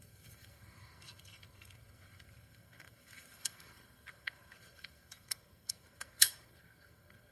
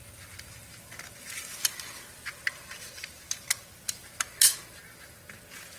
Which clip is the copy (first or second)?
first